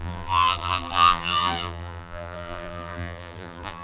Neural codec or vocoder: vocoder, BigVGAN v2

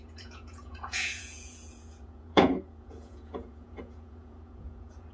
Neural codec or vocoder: vocoder, Vocos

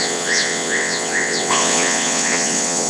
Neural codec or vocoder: vocoder, WaveNeXt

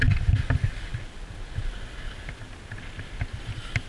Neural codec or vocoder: none